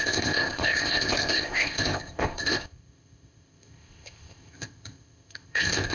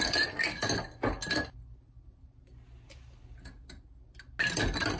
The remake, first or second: first